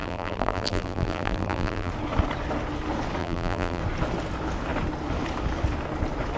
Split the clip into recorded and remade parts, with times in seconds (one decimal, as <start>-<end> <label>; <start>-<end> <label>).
0.0-1.9 remade; 1.9-3.2 recorded; 3.2-3.8 remade; 3.8-6.4 recorded